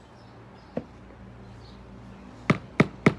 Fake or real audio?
real